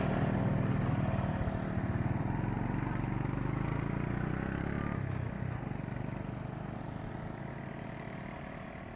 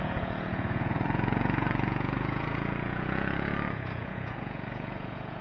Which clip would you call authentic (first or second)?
first